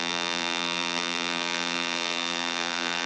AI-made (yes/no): yes